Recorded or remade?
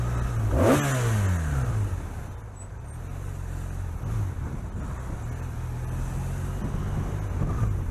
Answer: recorded